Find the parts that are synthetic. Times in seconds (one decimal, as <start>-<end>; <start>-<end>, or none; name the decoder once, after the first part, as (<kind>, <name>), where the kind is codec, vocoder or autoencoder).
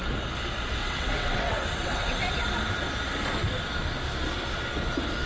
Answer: 0.8-2.3 (vocoder, WaveNeXt)